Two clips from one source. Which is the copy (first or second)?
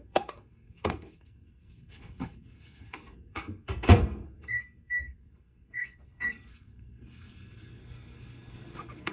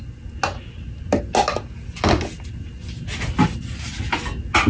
first